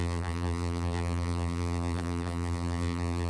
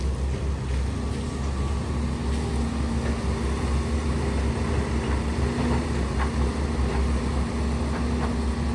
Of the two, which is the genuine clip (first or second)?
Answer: second